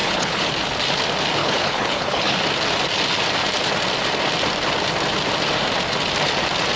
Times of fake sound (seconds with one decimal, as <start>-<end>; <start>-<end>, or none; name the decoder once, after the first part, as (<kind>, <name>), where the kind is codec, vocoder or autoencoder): 0.0-0.5 (codec, HILCodec); 1.4-2.4